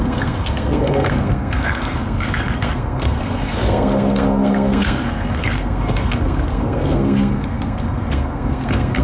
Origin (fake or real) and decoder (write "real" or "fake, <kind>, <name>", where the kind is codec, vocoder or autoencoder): fake, codec, SNAC